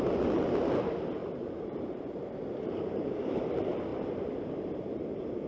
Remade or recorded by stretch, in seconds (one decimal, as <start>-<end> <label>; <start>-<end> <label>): 0.0-1.2 recorded; 1.2-3.5 remade; 3.5-3.9 recorded; 3.9-5.0 remade; 5.0-5.5 recorded